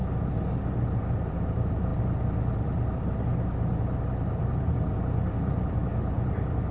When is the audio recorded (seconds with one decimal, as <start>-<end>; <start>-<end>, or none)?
0.0-1.0